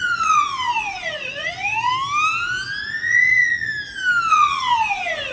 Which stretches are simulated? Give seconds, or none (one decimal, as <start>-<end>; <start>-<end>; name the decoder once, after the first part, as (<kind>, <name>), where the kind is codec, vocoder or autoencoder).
0.0-1.9 (vocoder, Vocos); 2.9-3.7; 4.3-5.3